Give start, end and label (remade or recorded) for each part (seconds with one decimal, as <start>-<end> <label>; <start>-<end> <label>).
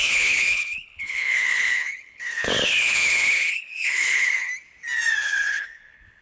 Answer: 0.0-4.5 remade; 4.5-5.2 recorded; 5.2-6.2 remade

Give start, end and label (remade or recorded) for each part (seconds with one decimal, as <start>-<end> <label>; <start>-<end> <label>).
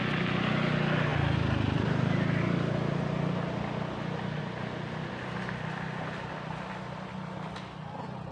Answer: 0.0-8.3 recorded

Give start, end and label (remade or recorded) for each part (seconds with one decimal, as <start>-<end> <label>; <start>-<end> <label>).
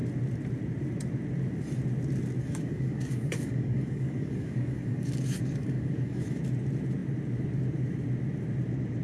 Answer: 0.0-2.4 recorded; 2.4-6.4 remade; 6.4-9.0 recorded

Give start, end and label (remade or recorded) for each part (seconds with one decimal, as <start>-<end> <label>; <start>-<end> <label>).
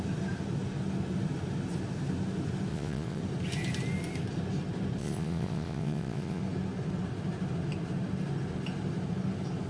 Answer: 0.0-2.7 recorded; 2.7-3.2 remade; 3.2-5.0 recorded; 5.0-6.4 remade; 6.4-9.7 recorded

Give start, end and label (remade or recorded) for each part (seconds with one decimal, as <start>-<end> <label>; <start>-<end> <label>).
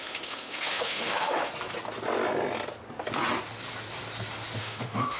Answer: 0.0-1.5 remade; 1.5-4.6 recorded; 4.6-5.2 remade